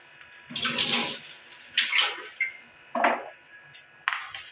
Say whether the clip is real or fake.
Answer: real